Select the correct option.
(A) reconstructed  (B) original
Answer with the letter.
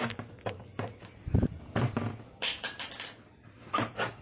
B